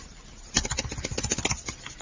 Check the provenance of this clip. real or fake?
real